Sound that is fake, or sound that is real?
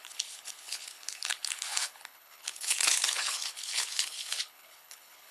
fake